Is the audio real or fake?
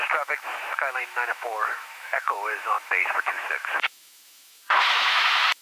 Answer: fake